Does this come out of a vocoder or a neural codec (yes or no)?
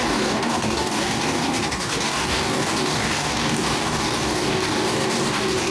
yes